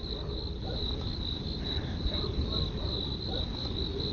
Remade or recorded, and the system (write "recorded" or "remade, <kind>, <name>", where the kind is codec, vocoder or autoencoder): recorded